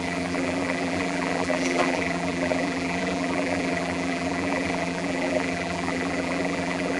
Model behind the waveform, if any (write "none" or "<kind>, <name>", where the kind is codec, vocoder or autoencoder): vocoder, BigVGAN v2